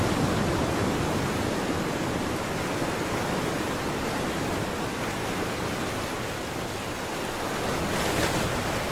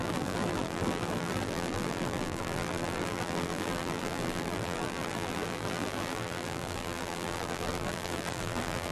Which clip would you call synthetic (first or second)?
second